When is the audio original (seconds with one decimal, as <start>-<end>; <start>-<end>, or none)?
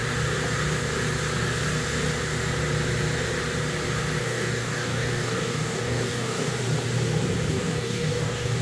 0.0-4.2; 6.5-7.5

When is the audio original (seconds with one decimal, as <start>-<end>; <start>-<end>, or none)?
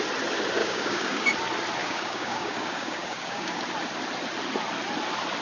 0.0-0.6; 1.3-1.8; 3.6-5.4